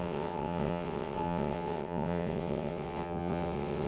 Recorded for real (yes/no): no